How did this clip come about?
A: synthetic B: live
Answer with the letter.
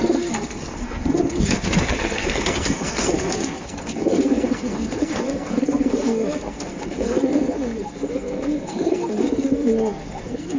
A